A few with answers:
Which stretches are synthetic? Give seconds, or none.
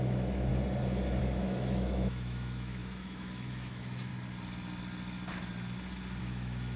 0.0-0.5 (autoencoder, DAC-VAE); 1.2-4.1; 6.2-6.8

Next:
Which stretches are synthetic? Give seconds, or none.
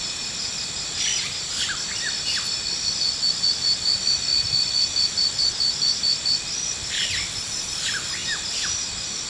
none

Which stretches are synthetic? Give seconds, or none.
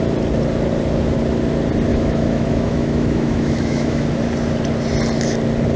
1.9-4.2 (autoencoder, DAC-VAE)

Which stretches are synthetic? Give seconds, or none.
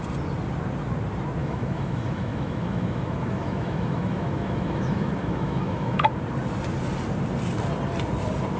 1.4-6.1 (autoencoder, DAC-VAE)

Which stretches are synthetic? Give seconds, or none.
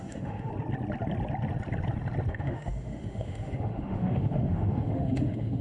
0.0-0.5 (autoencoder, DAC-VAE); 2.3-5.6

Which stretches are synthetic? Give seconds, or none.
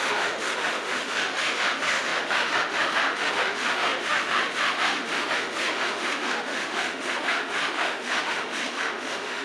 0.0-9.4 (autoencoder, DAC-VAE)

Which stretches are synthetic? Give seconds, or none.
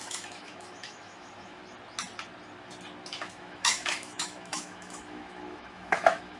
0.0-1.6 (autoencoder, DAC-VAE); 3.1-6.4